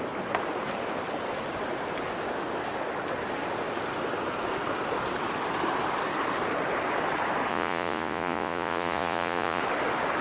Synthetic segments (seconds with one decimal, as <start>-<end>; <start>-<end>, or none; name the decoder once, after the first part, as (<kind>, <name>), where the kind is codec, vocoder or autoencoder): 7.5-9.6 (vocoder, Vocos)